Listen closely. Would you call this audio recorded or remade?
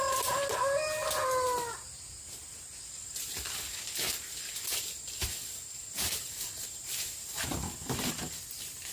recorded